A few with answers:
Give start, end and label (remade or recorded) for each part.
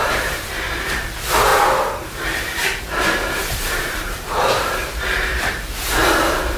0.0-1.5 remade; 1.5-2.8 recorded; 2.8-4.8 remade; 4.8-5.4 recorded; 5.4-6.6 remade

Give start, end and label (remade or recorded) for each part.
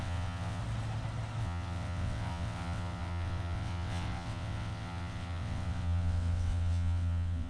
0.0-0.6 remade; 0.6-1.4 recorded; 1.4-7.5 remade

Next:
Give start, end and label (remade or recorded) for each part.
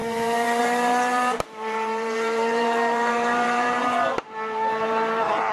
0.0-5.5 remade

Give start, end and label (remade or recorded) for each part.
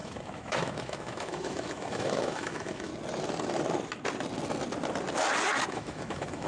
0.0-2.9 remade; 2.9-5.7 recorded; 5.7-6.5 remade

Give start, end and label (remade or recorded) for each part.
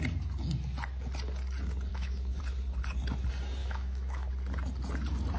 0.0-1.9 recorded; 1.9-2.4 remade; 2.4-3.6 recorded; 3.6-4.3 remade; 4.3-5.4 recorded